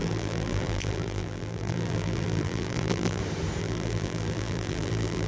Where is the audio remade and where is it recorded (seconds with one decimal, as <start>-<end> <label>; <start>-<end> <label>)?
0.0-3.2 remade; 3.2-3.6 recorded; 3.6-5.3 remade

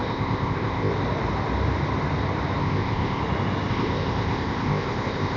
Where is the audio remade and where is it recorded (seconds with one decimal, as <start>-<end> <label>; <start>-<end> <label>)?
0.0-0.9 remade; 0.9-2.6 recorded; 2.6-3.2 remade; 3.2-3.7 recorded; 3.7-5.4 remade

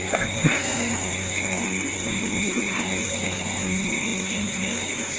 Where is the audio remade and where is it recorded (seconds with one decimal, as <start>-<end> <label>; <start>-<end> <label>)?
0.0-5.2 remade

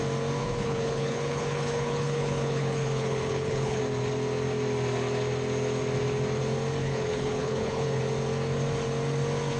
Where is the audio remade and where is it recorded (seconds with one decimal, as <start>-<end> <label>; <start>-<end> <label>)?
0.0-0.4 recorded; 0.4-3.8 remade; 3.8-6.8 recorded; 6.8-8.0 remade; 8.0-9.6 recorded

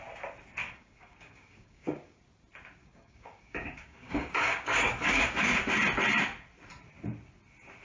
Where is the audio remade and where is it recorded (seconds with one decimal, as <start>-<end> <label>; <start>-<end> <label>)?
0.0-0.6 recorded; 0.6-2.2 remade; 2.2-2.8 recorded; 2.8-5.6 remade; 5.6-7.8 recorded

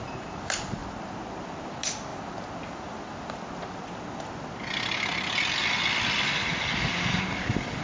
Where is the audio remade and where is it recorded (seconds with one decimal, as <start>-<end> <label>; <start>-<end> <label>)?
0.0-0.8 remade; 0.8-1.4 recorded; 1.4-2.1 remade; 2.1-6.8 recorded; 6.8-7.8 remade